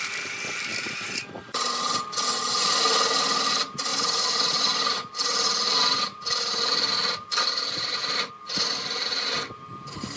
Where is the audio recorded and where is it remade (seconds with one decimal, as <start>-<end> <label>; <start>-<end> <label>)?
0.0-3.9 recorded; 3.9-8.3 remade; 8.3-10.2 recorded